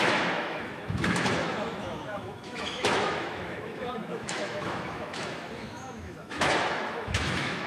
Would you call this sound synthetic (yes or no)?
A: yes